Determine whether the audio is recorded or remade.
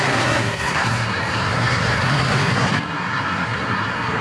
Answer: remade